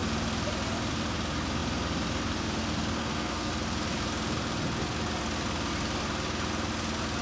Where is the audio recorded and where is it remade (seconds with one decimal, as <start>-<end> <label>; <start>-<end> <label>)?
0.0-3.0 recorded; 3.0-3.5 remade; 3.5-7.2 recorded